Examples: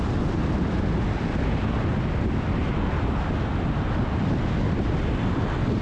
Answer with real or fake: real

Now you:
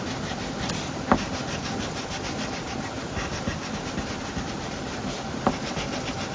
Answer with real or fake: real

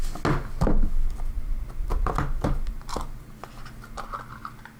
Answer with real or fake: real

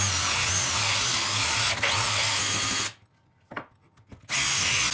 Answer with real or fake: real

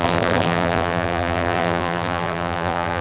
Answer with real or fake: fake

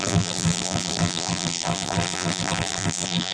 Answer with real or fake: fake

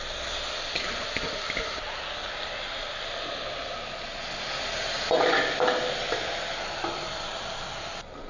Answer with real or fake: real